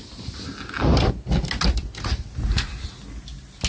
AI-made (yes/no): no